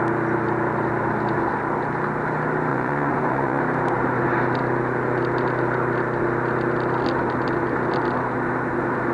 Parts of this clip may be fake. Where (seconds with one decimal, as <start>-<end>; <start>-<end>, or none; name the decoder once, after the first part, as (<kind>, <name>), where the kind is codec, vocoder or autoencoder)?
2.7-3.6 (vocoder, Vocos)